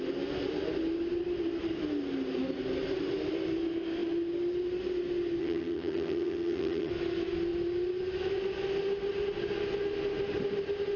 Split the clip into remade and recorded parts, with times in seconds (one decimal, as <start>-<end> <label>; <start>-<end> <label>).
0.0-5.4 recorded; 5.4-6.9 remade; 6.9-11.0 recorded